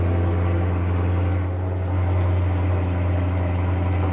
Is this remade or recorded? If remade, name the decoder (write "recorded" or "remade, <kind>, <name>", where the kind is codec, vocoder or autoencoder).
recorded